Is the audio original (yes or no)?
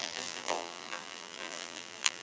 no